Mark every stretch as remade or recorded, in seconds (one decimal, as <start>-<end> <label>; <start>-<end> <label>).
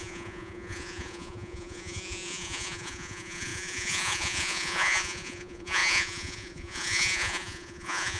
0.0-8.2 remade